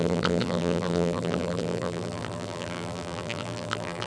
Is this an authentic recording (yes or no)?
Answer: no